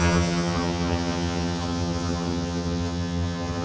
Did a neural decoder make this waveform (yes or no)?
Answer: yes